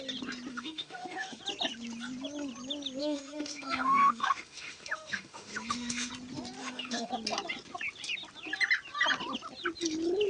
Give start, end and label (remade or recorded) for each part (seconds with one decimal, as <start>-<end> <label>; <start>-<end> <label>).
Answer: 0.0-0.5 recorded; 0.5-1.4 remade; 1.4-3.0 recorded; 3.0-6.1 remade; 6.1-6.6 recorded; 6.6-7.1 remade; 7.1-10.3 recorded